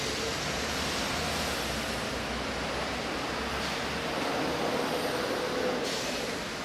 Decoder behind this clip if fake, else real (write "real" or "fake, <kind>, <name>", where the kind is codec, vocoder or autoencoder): real